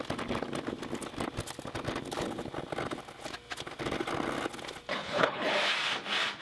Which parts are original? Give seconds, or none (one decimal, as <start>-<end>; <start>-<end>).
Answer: 0.0-4.9; 5.5-6.4